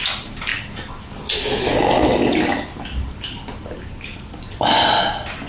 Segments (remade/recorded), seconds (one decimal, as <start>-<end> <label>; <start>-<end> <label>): 0.0-5.5 recorded